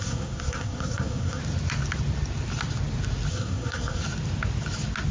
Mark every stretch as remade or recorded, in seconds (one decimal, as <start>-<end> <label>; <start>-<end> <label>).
0.0-1.4 remade; 1.4-3.3 recorded; 3.3-4.0 remade; 4.0-5.1 recorded